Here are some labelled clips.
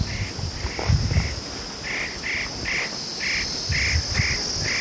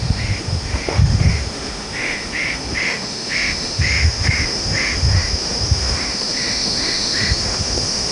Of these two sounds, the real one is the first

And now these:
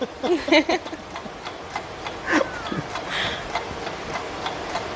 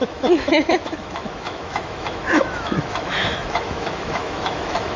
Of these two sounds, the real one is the first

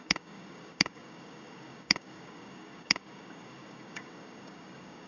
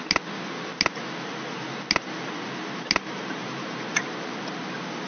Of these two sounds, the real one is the second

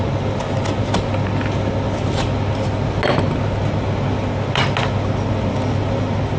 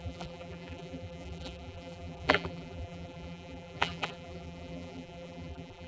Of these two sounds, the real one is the first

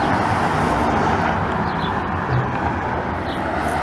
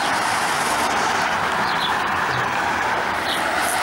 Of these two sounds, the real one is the first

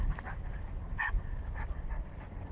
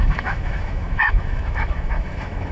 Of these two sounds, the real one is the first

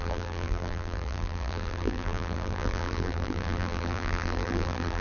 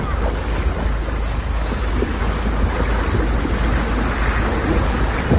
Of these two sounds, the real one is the second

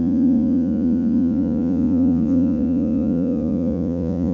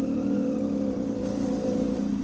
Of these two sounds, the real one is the second